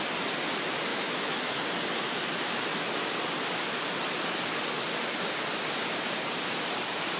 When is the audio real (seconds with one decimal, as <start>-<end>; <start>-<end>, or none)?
0.0-0.9; 1.6-7.2